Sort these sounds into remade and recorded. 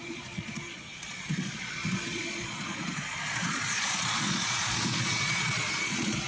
remade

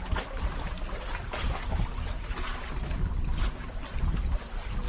recorded